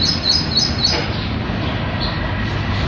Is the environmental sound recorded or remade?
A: recorded